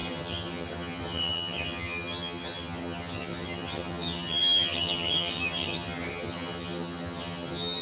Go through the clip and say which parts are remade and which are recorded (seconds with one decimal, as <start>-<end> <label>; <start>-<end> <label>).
0.0-7.8 remade